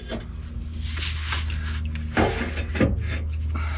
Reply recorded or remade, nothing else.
recorded